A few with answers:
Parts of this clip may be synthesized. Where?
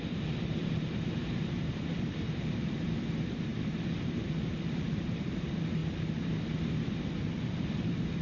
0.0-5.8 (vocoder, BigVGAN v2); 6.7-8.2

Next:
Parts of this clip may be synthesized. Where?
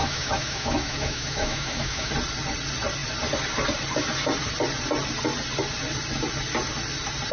0.0-2.1 (autoencoder, DAC-VAE)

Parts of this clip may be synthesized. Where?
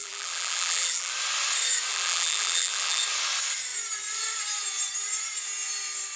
0.0-1.1 (vocoder, BigVGAN v2); 1.9-3.0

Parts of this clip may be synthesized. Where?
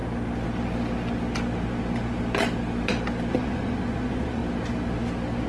3.3-4.4 (vocoder, Vocos)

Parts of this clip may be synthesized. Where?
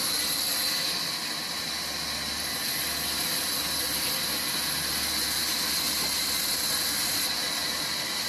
none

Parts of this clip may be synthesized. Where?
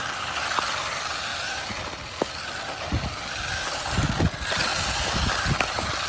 none